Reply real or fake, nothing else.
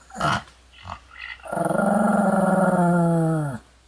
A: real